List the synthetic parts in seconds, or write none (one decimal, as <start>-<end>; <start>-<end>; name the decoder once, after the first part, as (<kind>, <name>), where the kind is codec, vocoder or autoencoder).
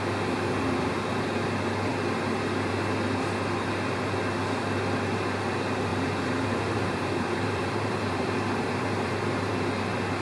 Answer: 5.9-9.5 (vocoder, BigVGAN v2)